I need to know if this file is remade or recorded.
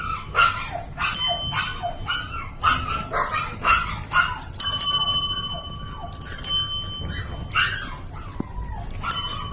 recorded